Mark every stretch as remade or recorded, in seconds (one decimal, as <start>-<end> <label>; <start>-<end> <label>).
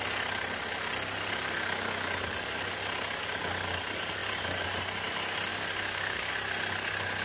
0.0-5.5 recorded; 5.5-6.3 remade; 6.3-7.2 recorded